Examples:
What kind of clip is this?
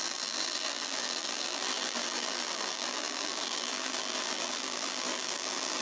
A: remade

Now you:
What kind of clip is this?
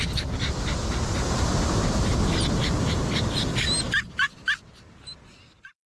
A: recorded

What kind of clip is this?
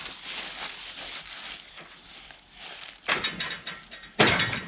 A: remade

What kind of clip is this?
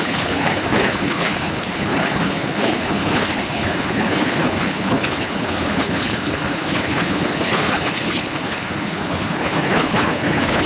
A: remade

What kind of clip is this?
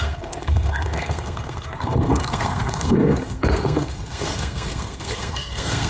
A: remade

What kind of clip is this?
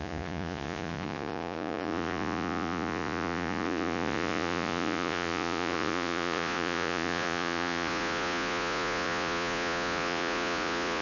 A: remade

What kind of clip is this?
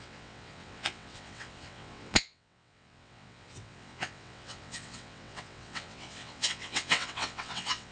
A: remade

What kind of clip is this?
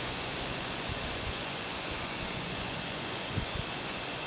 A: remade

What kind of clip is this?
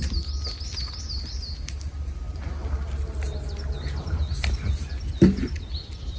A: recorded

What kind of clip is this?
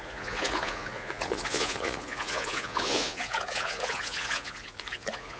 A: remade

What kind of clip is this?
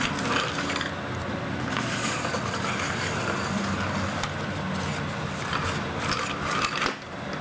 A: recorded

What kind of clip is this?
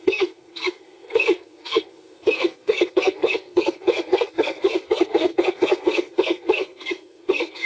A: remade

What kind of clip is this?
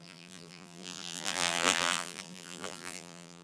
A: remade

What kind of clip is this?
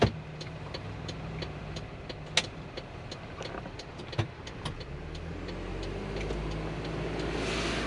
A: recorded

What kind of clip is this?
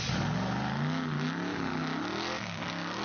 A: recorded